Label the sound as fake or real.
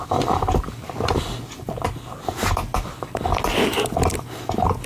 real